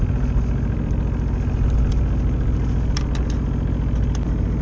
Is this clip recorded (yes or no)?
yes